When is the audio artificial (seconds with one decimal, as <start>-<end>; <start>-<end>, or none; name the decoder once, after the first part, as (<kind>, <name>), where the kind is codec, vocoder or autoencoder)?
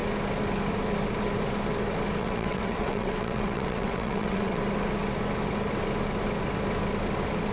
2.2-4.6 (vocoder, WaveNeXt)